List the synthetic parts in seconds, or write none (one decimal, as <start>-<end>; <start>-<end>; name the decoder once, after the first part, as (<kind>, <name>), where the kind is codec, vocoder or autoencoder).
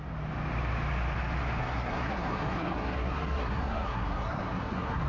1.6-5.1 (codec, SNAC)